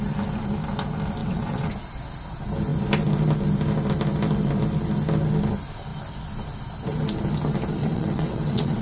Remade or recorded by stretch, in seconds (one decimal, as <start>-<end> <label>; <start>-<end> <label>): 0.0-1.2 recorded; 1.2-1.7 remade; 1.7-7.8 recorded; 7.8-8.8 remade